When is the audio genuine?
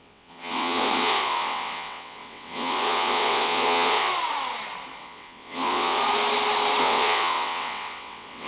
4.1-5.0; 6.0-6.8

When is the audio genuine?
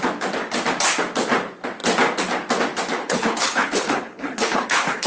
0.0-3.0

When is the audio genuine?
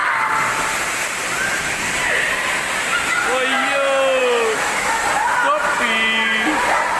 0.0-4.2; 5.0-7.0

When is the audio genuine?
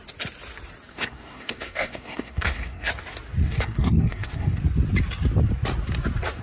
0.0-0.9; 2.9-3.4; 4.6-6.4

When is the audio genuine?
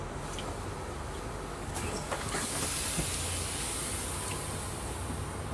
0.0-1.5; 2.6-5.5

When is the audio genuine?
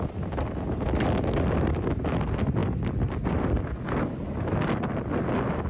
0.0-5.7